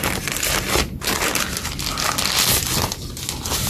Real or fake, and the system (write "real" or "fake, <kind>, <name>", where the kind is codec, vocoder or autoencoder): real